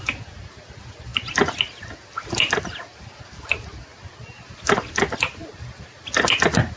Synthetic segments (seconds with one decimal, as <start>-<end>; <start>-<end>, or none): none